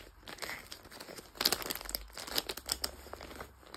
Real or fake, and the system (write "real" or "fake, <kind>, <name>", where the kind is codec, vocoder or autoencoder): real